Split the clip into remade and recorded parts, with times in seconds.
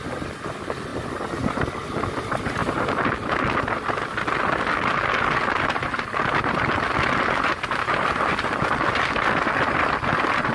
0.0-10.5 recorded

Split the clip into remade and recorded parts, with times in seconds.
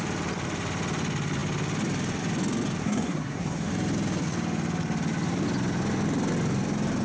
0.0-2.8 recorded; 2.8-3.7 remade; 3.7-7.0 recorded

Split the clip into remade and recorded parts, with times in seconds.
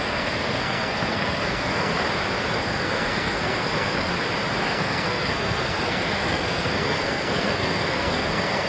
0.0-1.9 remade; 1.9-2.4 recorded; 2.4-4.1 remade; 4.1-4.6 recorded; 4.6-8.7 remade